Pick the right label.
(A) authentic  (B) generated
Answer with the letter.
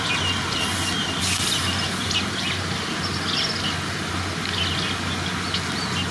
A